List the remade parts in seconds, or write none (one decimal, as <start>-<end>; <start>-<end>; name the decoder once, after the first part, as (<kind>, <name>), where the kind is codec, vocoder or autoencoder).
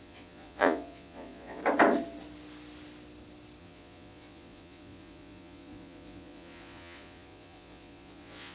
0.0-1.6 (vocoder, Vocos); 3.6-8.5